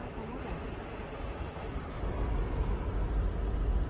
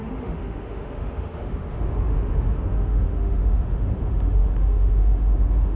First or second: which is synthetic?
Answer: second